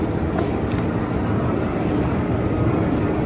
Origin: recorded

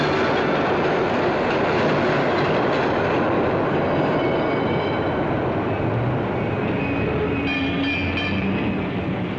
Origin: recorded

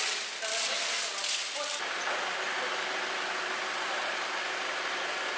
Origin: recorded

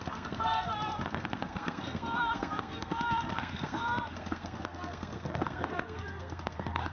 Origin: remade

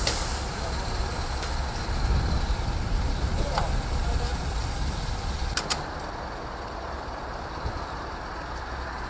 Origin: recorded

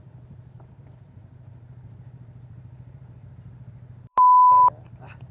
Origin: remade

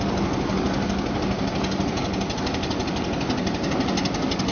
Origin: recorded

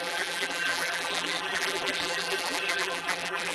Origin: remade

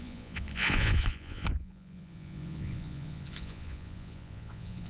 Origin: remade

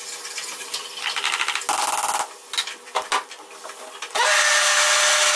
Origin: recorded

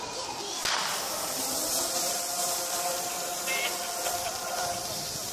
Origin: recorded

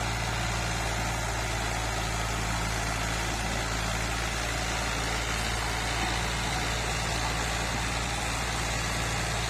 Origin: recorded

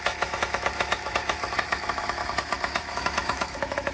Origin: remade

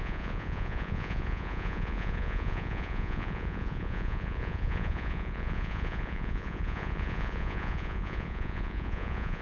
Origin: remade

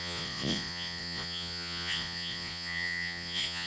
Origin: remade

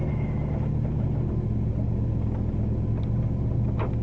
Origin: recorded